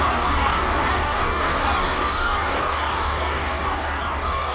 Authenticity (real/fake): fake